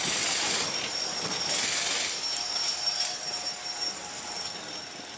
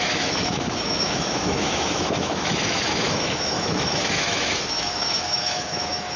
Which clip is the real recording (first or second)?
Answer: first